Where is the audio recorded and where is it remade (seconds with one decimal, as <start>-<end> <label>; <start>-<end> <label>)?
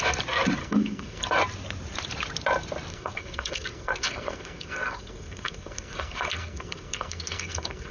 0.0-0.6 recorded; 0.6-1.2 remade; 1.2-2.9 recorded; 2.9-7.9 remade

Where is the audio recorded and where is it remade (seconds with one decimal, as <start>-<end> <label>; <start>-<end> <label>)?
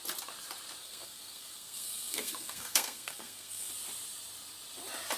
0.0-0.8 recorded; 0.8-3.7 remade; 3.7-5.2 recorded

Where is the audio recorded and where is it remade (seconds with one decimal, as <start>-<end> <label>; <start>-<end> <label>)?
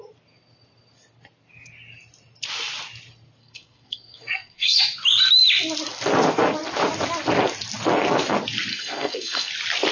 0.0-3.4 recorded; 3.4-4.8 remade; 4.8-8.7 recorded; 8.7-9.5 remade; 9.5-9.9 recorded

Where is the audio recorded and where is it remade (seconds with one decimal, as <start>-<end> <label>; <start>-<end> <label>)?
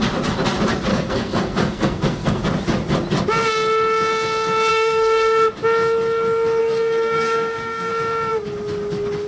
0.0-0.9 recorded; 0.9-2.4 remade; 2.4-4.7 recorded; 4.7-5.5 remade; 5.5-6.6 recorded; 6.6-7.9 remade; 7.9-9.3 recorded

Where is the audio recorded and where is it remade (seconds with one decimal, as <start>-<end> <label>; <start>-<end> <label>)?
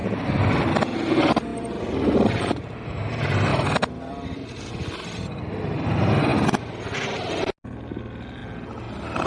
0.0-9.3 recorded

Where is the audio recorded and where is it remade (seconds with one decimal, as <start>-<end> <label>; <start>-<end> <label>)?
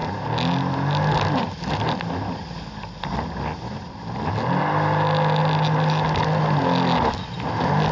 0.0-7.9 recorded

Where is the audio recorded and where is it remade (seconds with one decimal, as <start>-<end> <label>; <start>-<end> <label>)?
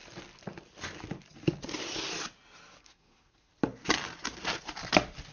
0.0-2.8 recorded; 2.8-3.5 remade; 3.5-5.3 recorded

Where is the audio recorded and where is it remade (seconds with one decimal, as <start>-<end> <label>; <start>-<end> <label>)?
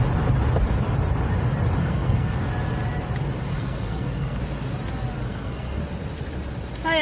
0.0-1.8 recorded; 1.8-2.4 remade; 2.4-3.5 recorded; 3.5-4.4 remade; 4.4-5.2 recorded; 5.2-5.8 remade; 5.8-7.0 recorded